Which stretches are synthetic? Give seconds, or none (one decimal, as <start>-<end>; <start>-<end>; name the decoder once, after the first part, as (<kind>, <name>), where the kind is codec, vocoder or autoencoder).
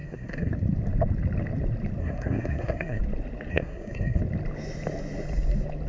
0.0-0.5 (codec, SNAC); 2.0-3.0; 3.5-4.2